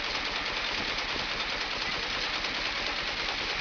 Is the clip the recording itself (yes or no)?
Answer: yes